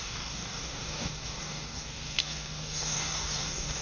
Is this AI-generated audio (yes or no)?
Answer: yes